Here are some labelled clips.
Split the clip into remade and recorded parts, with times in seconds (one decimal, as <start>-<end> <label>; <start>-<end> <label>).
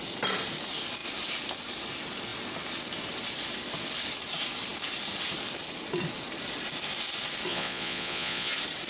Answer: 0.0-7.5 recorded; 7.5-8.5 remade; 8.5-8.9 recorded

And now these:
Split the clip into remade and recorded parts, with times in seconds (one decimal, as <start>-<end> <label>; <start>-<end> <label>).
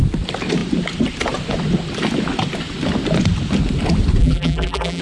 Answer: 0.0-4.2 recorded; 4.2-5.0 remade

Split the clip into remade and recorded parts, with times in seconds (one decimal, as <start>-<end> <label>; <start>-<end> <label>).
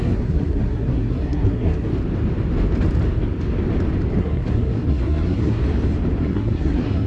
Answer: 0.0-1.9 remade; 1.9-4.2 recorded; 4.2-5.6 remade; 5.6-6.2 recorded; 6.2-7.1 remade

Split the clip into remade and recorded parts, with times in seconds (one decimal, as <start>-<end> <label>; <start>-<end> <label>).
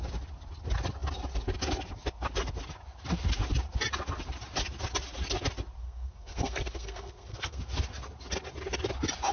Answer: 0.0-5.8 recorded; 5.8-7.6 remade; 7.6-9.3 recorded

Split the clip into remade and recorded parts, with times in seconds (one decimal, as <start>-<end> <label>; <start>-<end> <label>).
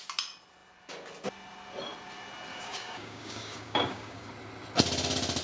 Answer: 0.0-2.5 recorded; 2.5-4.3 remade; 4.3-5.4 recorded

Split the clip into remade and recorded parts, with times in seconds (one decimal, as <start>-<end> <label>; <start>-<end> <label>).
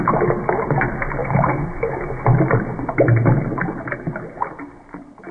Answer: 0.0-1.2 recorded; 1.2-2.2 remade; 2.2-5.3 recorded